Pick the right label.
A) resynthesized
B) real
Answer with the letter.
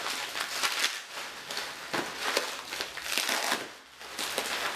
B